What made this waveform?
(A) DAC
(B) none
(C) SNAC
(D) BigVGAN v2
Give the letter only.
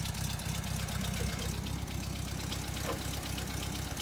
B